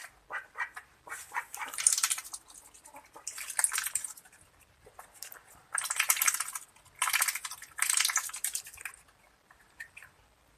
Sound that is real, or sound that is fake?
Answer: real